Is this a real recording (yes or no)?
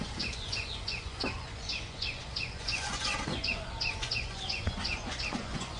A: no